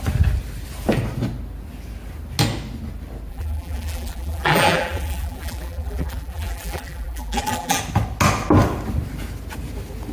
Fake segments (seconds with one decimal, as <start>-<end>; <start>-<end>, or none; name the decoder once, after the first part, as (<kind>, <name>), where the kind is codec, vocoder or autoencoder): 3.3-7.8 (vocoder, BigVGAN v2)